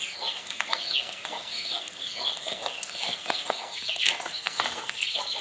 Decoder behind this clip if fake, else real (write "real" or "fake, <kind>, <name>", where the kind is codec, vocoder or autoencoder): fake, codec, SNAC